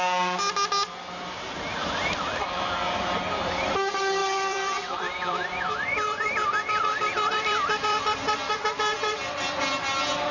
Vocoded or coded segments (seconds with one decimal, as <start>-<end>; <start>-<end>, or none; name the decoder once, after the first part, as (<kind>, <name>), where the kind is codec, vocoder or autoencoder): 1.8-3.3 (vocoder, BigVGAN v2); 4.2-8.5